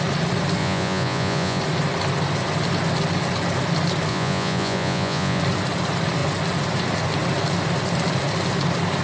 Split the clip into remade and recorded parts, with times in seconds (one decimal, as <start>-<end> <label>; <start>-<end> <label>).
0.0-0.6 recorded; 0.6-1.6 remade; 1.6-4.1 recorded; 4.1-5.4 remade; 5.4-9.0 recorded